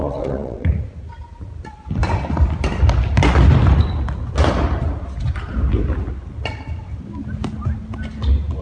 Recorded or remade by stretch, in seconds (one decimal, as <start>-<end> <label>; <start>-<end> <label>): 0.0-0.7 remade; 0.7-8.6 recorded